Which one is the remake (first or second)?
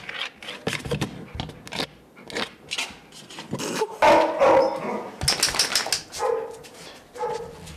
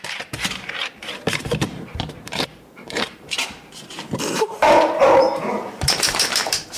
second